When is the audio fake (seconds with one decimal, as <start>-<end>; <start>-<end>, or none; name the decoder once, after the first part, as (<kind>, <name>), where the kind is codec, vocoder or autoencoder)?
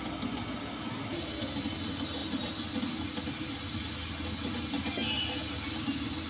none